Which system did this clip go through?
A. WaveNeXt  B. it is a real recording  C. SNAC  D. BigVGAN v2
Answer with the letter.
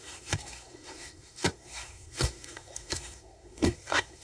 C